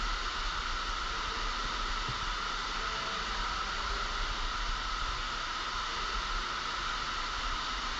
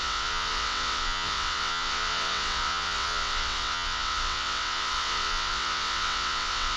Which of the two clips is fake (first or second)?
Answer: second